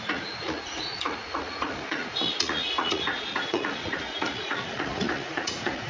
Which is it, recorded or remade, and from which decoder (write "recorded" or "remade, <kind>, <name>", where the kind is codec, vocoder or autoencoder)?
remade, vocoder, Vocos